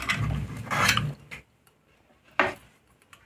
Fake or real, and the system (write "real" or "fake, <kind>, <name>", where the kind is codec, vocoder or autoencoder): real